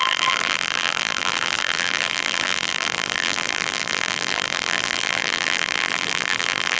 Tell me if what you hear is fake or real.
fake